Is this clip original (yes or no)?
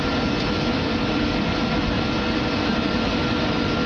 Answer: yes